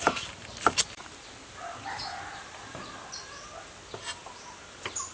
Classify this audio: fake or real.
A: real